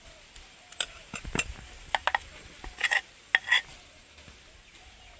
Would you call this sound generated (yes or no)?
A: no